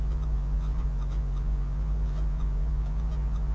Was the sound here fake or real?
fake